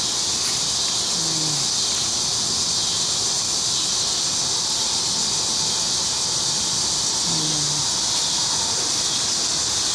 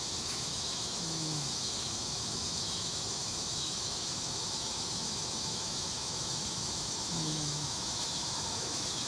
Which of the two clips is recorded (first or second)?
first